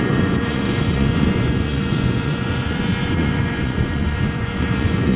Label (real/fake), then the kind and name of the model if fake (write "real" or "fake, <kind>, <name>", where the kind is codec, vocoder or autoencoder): fake, vocoder, Vocos